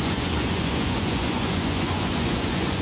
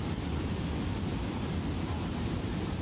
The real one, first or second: second